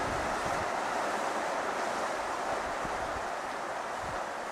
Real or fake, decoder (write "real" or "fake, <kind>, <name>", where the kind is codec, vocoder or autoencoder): real